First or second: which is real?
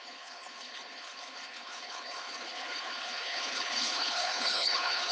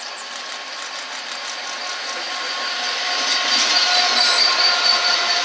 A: second